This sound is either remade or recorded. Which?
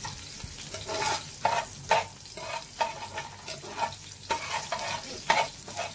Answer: recorded